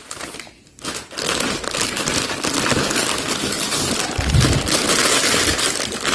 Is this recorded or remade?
recorded